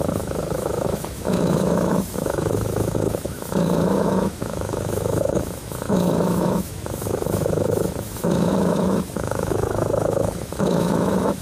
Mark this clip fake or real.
fake